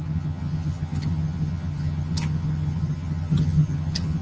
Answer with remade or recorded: remade